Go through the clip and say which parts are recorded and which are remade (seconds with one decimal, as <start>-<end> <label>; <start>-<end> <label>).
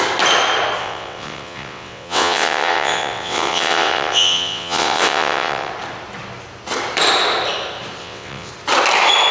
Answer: 0.0-0.8 recorded; 0.8-5.7 remade; 5.7-8.0 recorded; 8.0-8.5 remade; 8.5-9.3 recorded